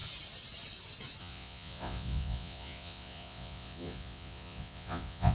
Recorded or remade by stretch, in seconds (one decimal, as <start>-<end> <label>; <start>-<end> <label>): 0.0-1.2 recorded; 1.2-5.3 remade